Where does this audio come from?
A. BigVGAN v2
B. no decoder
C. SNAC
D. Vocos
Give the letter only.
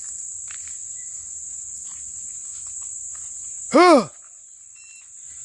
B